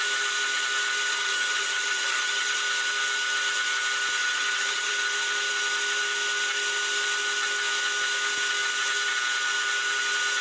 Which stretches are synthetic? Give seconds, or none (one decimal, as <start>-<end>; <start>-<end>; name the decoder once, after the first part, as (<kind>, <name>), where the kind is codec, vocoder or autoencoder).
1.1-2.6 (vocoder, HiFi-GAN); 4.2-4.9